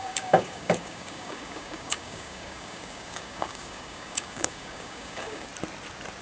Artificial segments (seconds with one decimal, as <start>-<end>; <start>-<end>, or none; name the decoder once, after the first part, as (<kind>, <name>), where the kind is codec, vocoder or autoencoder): 0.0-5.5 (codec, DAC)